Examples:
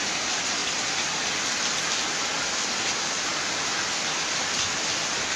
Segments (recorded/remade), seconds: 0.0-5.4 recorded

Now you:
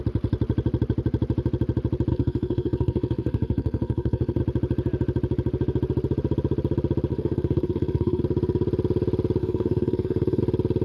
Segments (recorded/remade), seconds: 0.0-2.1 recorded; 2.1-4.4 remade; 4.4-7.1 recorded; 7.1-8.2 remade; 8.2-9.4 recorded; 9.4-10.4 remade; 10.4-10.8 recorded